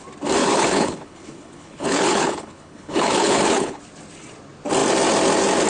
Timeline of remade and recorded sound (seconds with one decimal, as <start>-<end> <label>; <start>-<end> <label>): 0.0-0.4 recorded; 0.4-3.8 remade; 3.8-5.7 recorded

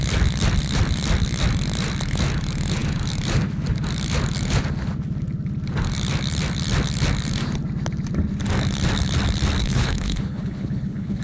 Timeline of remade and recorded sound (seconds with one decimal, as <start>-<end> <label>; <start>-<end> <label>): 0.0-9.6 recorded; 9.6-11.2 remade

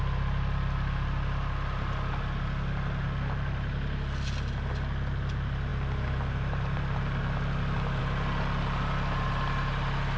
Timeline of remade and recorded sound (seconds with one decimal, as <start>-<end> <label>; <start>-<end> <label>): 0.0-10.2 recorded